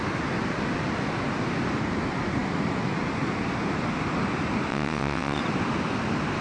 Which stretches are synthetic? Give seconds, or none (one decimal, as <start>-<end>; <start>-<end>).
4.7-5.4